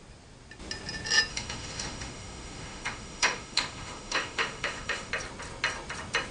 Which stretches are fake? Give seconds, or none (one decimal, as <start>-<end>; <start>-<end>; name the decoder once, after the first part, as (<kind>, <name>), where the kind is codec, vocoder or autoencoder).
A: 1.3-5.1 (autoencoder, DAC-VAE)